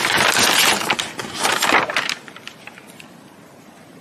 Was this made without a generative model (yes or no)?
yes